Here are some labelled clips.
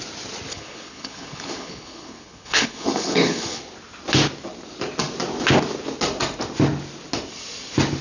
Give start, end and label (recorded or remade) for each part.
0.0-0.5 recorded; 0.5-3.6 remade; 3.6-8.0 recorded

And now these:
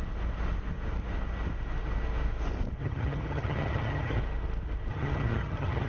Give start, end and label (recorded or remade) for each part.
0.0-2.8 recorded; 2.8-4.2 remade; 4.2-4.9 recorded; 4.9-5.9 remade

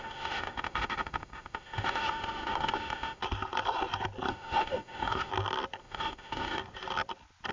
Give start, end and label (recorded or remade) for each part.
0.0-3.2 remade; 3.2-4.3 recorded; 4.3-5.3 remade; 5.3-5.8 recorded; 5.8-6.6 remade; 6.6-7.5 recorded

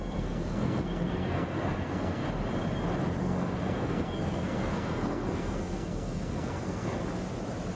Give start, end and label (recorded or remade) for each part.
0.0-2.2 remade; 2.2-3.2 recorded; 3.2-7.0 remade; 7.0-7.8 recorded

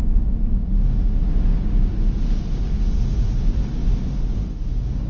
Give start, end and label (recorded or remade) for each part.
0.0-5.1 remade